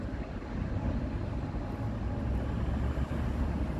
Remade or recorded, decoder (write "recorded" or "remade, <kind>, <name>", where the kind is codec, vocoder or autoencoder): recorded